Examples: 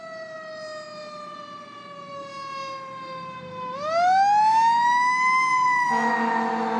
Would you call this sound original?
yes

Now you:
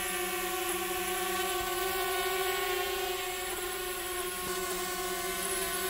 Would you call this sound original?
yes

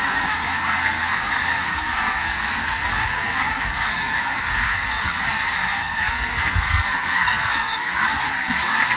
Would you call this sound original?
no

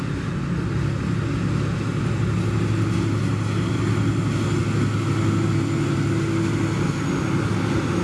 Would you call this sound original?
yes